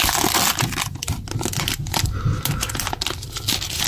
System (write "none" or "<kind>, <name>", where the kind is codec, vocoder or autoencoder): none